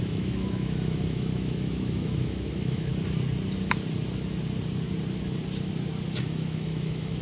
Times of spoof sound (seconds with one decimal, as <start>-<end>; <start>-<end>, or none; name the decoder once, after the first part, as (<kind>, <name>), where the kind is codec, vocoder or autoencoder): 0.0-2.9 (autoencoder, DAC-VAE); 6.2-7.2